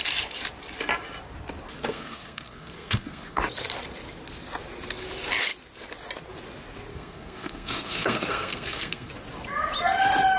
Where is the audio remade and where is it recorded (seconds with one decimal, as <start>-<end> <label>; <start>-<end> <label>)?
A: 0.0-1.9 recorded; 1.9-3.4 remade; 3.4-6.9 recorded; 6.9-9.1 remade; 9.1-10.4 recorded